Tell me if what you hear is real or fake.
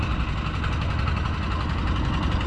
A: real